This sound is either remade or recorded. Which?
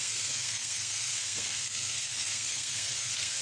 remade